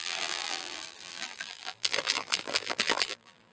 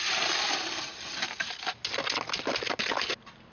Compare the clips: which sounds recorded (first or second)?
second